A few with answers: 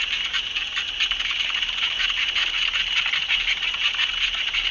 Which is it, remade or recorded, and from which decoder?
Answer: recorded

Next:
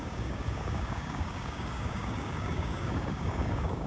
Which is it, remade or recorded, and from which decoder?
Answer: remade, codec, DAC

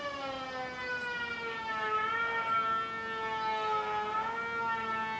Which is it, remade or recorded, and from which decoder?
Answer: recorded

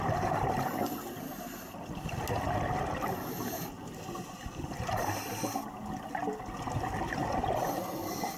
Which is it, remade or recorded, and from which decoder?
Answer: recorded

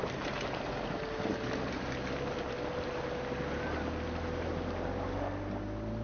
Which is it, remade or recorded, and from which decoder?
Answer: recorded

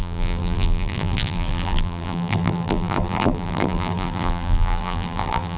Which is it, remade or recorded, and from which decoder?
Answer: remade, vocoder, BigVGAN v2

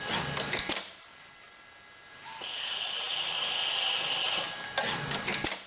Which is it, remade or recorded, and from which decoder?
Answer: recorded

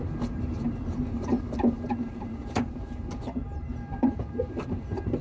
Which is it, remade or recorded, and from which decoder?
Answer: remade, vocoder, BigVGAN v2